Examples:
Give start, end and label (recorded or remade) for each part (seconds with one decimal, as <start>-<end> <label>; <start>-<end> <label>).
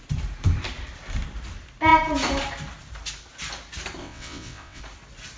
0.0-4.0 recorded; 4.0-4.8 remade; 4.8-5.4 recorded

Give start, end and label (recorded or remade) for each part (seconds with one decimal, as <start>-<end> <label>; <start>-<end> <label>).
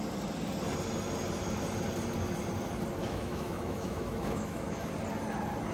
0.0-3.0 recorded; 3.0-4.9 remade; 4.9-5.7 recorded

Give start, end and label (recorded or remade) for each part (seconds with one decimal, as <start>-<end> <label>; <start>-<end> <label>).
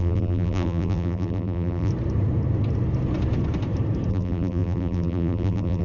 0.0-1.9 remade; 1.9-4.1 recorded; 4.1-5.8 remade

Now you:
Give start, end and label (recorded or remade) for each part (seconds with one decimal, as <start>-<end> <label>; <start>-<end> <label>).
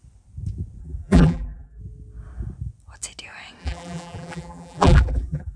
0.0-0.8 recorded; 0.8-1.8 remade; 1.8-3.6 recorded; 3.6-5.6 remade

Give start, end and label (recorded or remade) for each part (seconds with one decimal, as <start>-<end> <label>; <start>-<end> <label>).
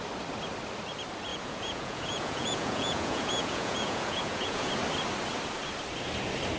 0.0-1.3 recorded; 1.3-4.7 remade; 4.7-6.6 recorded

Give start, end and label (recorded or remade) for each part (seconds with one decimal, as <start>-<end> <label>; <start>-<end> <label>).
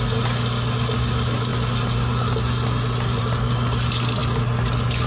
0.0-5.1 recorded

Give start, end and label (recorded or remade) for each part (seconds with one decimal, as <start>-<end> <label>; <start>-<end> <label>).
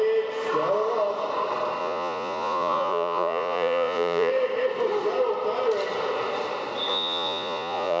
0.0-1.8 recorded; 1.8-4.3 remade; 4.3-6.9 recorded; 6.9-8.0 remade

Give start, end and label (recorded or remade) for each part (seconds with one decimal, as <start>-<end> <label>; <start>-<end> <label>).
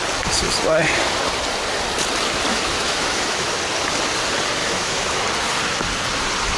0.0-2.5 recorded; 2.5-3.5 remade; 3.5-4.6 recorded; 4.6-5.2 remade; 5.2-6.6 recorded